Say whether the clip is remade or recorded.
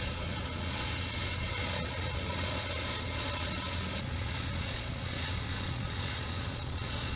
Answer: remade